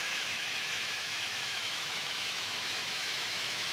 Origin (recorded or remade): remade